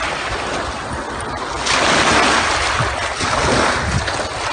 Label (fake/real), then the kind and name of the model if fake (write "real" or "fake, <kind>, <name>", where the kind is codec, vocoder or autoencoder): real